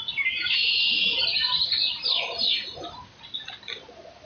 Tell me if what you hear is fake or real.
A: real